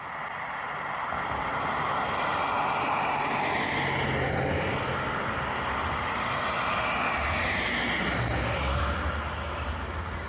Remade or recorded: recorded